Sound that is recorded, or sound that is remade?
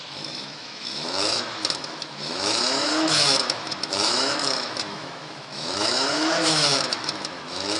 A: remade